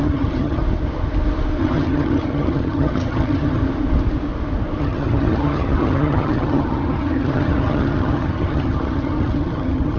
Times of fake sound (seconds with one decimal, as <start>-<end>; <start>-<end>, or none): 0.0-0.6; 1.6-3.6; 4.8-10.0